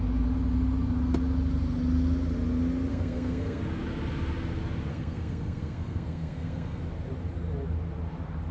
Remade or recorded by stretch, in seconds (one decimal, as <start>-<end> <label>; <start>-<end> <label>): 0.0-2.9 recorded; 2.9-3.6 remade; 3.6-4.9 recorded; 4.9-6.8 remade; 6.8-8.5 recorded